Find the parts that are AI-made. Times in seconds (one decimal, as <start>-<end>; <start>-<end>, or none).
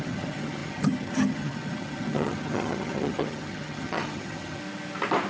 0.0-4.6